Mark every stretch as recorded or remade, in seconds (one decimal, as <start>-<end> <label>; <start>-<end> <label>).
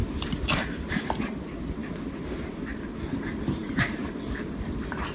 0.0-3.6 recorded; 3.6-4.2 remade; 4.2-5.1 recorded